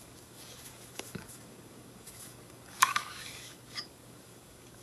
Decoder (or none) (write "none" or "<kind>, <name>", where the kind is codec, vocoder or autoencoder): codec, DAC